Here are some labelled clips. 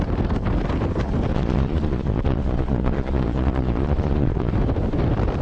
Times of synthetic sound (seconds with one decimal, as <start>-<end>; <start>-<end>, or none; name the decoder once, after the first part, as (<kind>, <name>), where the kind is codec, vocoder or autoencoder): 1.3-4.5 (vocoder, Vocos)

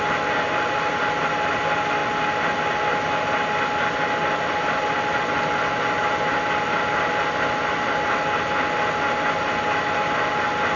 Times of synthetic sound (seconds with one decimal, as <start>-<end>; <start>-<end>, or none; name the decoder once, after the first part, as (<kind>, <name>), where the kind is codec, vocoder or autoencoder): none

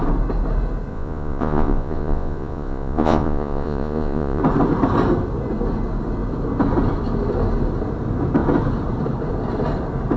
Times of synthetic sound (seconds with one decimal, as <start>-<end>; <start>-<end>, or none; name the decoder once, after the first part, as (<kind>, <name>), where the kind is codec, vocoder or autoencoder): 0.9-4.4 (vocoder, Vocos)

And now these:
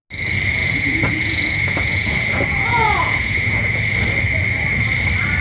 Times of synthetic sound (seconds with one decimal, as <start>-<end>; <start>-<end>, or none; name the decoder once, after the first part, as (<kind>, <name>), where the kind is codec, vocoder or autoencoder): 0.6-3.8 (vocoder, Vocos)